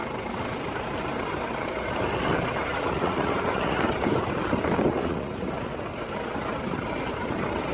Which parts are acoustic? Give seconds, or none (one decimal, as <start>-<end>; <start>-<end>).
0.0-2.7; 3.8-4.9; 5.5-7.7